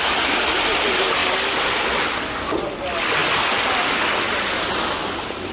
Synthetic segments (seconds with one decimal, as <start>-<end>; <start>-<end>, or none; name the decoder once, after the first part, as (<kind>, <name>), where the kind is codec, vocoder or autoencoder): none